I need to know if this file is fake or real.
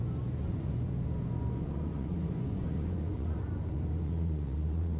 fake